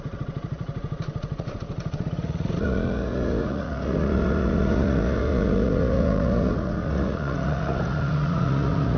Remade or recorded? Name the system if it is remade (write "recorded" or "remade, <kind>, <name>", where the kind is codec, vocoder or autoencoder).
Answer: remade, vocoder, Vocos